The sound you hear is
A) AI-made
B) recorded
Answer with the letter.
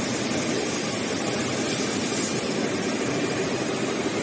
B